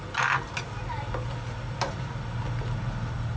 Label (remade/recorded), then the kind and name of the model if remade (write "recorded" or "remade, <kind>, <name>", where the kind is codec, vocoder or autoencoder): recorded